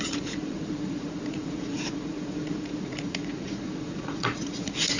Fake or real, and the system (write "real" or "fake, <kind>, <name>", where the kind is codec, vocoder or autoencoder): fake, vocoder, Vocos